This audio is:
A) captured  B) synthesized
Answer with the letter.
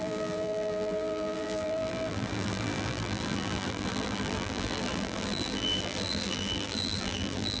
B